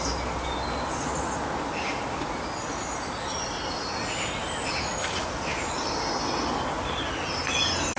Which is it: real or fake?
real